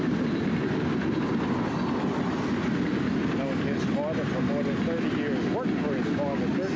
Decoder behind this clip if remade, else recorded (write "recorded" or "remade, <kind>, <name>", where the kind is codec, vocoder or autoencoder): recorded